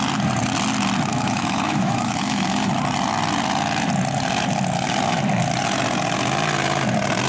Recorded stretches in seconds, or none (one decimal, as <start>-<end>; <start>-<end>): 0.0-1.1; 2.7-7.3